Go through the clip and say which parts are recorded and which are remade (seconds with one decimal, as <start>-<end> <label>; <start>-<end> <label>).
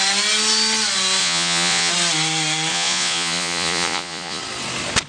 0.0-1.2 recorded; 1.2-1.9 remade; 1.9-2.7 recorded; 2.7-4.4 remade; 4.4-5.1 recorded